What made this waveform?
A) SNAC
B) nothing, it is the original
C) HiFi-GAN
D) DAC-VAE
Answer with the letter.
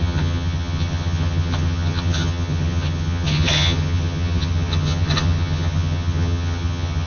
C